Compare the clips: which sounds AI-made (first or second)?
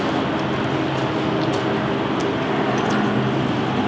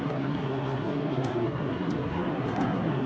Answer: second